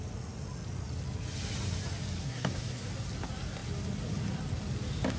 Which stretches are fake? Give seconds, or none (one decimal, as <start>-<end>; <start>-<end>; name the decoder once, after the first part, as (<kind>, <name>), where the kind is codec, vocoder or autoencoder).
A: 2.2-2.9 (codec, SNAC)